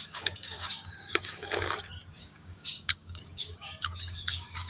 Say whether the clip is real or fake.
fake